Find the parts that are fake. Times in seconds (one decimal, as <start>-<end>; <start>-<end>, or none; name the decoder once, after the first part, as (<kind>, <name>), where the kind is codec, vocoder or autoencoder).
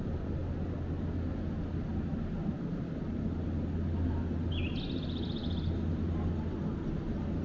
none